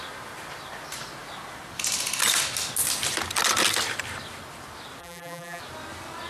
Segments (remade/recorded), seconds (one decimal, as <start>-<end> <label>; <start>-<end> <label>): 0.0-5.0 recorded; 5.0-5.6 remade; 5.6-6.3 recorded